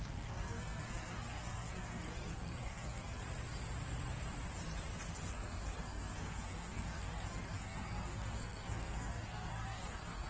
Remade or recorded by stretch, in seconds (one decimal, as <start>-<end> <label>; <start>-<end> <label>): 0.0-3.2 remade; 3.2-5.3 recorded; 5.3-10.3 remade